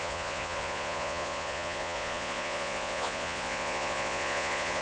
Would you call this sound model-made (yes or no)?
yes